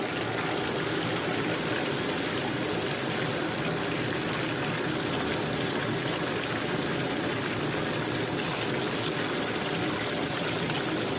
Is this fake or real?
real